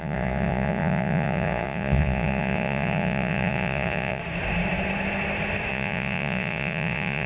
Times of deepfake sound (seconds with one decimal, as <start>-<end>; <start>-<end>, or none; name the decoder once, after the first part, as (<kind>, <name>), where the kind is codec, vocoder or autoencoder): 0.0-4.2 (vocoder, Vocos); 5.7-7.3